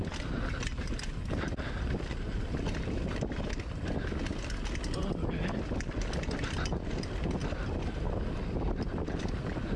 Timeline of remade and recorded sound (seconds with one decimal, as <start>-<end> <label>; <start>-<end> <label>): 0.0-9.8 recorded